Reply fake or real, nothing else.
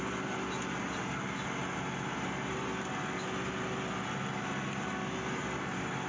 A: real